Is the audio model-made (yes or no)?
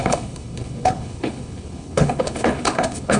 yes